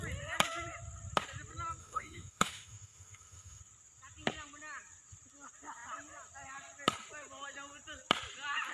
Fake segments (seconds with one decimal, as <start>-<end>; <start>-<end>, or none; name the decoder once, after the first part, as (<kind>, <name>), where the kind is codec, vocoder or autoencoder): 1.8-3.6 (autoencoder, DAC-VAE)